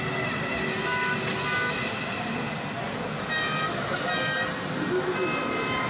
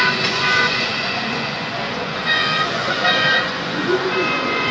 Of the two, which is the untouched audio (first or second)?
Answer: first